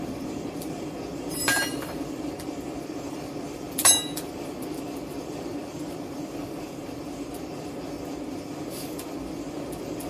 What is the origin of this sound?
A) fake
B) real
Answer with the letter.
A